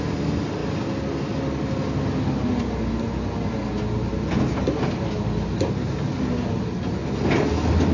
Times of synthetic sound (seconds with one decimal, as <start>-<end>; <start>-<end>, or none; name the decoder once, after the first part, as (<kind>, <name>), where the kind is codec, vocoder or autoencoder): none